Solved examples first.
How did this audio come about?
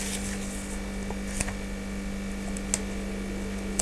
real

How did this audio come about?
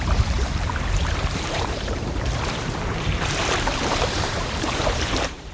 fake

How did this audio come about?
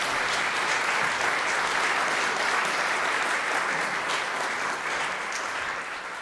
real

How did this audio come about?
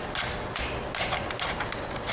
real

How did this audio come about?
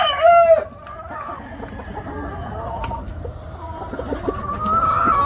real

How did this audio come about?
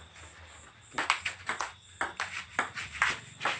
real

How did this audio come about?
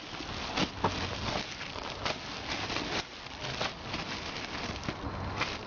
real